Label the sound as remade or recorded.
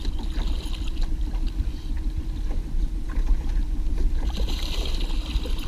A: recorded